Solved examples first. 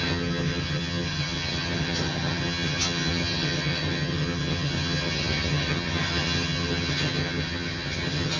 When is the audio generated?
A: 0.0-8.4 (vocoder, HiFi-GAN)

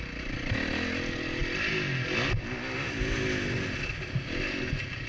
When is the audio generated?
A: none